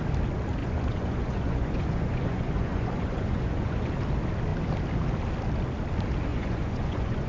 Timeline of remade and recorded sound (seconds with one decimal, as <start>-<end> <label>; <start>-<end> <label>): 0.0-0.6 recorded; 0.6-3.9 remade; 3.9-6.3 recorded; 6.3-7.3 remade